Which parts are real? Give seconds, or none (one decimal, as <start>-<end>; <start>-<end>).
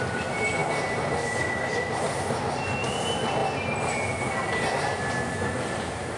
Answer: 0.0-6.2